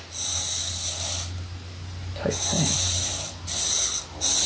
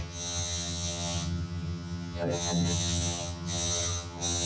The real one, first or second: first